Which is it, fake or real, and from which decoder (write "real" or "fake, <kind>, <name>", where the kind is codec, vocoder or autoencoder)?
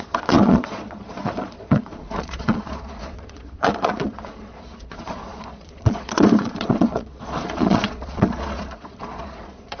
fake, vocoder, Vocos